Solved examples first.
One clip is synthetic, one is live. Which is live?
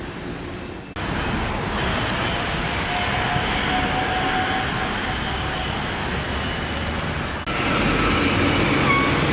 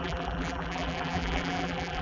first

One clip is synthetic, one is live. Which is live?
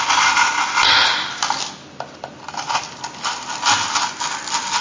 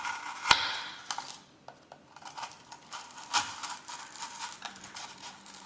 first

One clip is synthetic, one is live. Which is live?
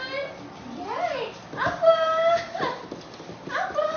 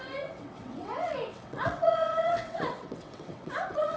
first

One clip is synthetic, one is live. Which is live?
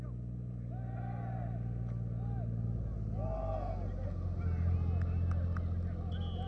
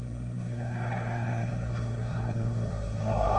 first